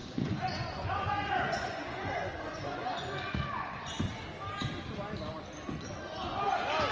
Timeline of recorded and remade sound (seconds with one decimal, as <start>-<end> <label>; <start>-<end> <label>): 0.0-4.1 remade; 4.1-6.9 recorded